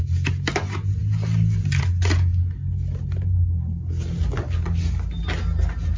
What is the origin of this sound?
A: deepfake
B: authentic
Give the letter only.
B